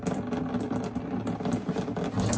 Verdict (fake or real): real